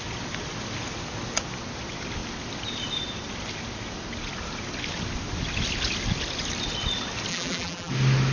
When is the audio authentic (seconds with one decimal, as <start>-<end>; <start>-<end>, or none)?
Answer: 0.0-7.3; 7.9-8.3